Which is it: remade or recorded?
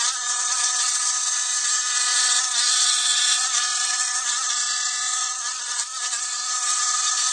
remade